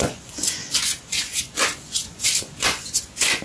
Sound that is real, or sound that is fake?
fake